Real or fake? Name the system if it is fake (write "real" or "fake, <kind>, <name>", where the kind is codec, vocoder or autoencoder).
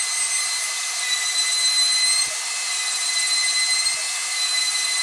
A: real